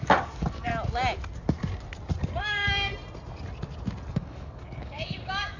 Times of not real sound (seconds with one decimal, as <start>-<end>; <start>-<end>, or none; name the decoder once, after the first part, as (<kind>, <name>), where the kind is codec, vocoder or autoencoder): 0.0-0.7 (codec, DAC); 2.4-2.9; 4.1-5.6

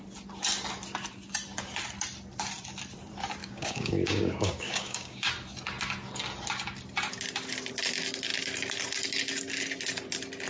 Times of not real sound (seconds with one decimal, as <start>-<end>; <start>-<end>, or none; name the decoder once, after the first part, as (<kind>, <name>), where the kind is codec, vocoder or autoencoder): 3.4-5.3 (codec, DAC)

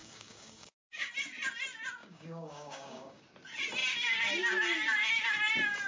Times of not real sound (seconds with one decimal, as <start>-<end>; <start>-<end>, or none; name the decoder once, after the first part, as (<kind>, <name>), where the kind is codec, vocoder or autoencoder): 0.0-1.1 (codec, DAC); 2.0-3.2

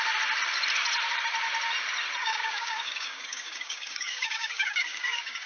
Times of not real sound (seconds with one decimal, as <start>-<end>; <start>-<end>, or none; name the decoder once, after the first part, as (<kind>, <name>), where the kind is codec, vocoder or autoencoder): 2.2-5.5 (codec, DAC)